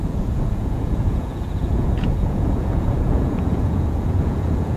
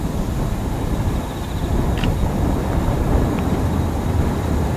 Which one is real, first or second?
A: second